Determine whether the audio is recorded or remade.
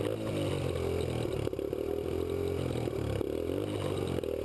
recorded